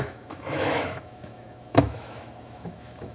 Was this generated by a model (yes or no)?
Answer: yes